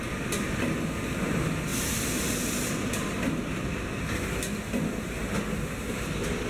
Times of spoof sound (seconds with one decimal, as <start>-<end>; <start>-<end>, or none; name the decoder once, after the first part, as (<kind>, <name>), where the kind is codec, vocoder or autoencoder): 1.7-2.3 (vocoder, BigVGAN v2)